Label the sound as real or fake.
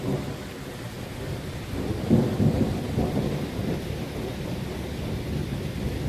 real